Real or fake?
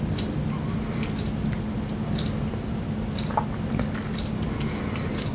real